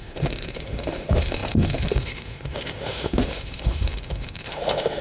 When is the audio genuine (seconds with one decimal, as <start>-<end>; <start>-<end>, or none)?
none